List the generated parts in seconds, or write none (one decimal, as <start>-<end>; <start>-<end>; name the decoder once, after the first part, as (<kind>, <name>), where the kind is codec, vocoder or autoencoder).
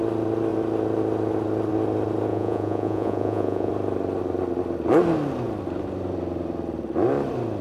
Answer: 2.3-3.7 (vocoder, Vocos)